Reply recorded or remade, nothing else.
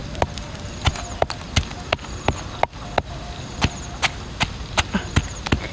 recorded